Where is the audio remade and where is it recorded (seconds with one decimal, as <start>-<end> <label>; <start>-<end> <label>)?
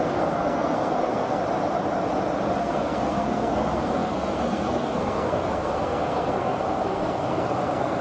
0.0-1.4 remade; 1.4-2.6 recorded; 2.6-8.0 remade